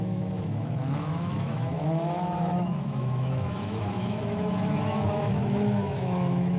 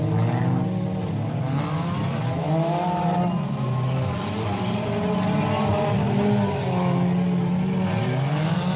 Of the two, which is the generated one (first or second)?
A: first